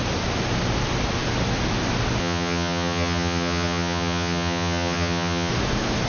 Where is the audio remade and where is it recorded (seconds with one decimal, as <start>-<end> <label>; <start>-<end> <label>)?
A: 0.0-2.2 recorded; 2.2-5.5 remade; 5.5-6.1 recorded